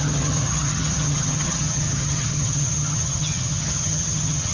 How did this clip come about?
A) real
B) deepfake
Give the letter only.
B